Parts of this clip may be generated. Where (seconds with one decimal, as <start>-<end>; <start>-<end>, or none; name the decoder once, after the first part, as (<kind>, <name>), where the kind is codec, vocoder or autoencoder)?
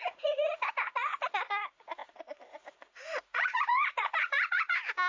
0.0-5.1 (vocoder, Vocos)